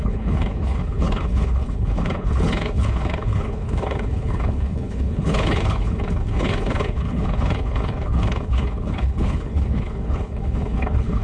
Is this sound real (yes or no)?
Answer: no